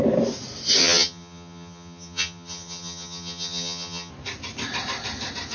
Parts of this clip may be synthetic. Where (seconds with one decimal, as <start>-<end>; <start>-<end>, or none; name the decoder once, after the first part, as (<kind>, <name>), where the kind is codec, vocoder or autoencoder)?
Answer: 0.8-4.1 (vocoder, HiFi-GAN)

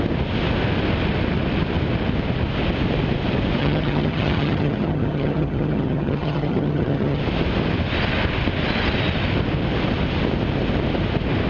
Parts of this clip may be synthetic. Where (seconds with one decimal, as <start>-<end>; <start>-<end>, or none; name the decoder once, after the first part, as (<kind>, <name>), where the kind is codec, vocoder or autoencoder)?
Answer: 3.6-7.2 (vocoder, HiFi-GAN)

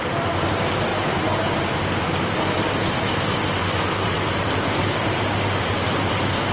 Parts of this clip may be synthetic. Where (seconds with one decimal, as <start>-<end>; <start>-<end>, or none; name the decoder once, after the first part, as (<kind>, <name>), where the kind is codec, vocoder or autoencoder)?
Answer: none

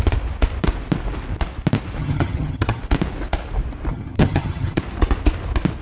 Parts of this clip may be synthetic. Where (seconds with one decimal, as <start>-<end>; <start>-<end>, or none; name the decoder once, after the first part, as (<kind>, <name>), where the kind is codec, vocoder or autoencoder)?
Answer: 2.0-2.8 (vocoder, HiFi-GAN); 3.9-4.8

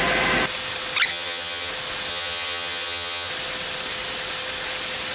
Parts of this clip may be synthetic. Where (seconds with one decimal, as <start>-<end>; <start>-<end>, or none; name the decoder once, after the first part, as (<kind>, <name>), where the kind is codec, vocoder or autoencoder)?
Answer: 1.1-1.7 (vocoder, HiFi-GAN); 2.1-3.3

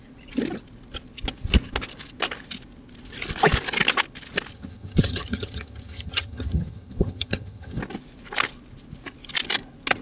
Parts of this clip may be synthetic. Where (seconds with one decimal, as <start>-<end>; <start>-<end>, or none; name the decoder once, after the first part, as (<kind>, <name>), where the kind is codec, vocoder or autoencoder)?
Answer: 4.5-7.8 (vocoder, HiFi-GAN)

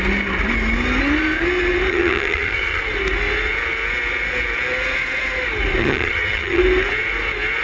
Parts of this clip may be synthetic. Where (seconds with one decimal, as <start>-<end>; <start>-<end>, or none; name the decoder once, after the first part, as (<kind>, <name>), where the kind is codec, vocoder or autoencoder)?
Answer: 1.9-2.8 (vocoder, HiFi-GAN); 5.8-6.6